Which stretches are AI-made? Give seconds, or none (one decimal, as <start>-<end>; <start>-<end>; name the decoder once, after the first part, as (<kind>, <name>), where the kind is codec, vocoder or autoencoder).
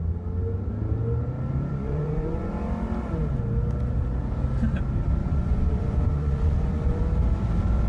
1.7-2.5 (vocoder, Vocos); 5.2-7.0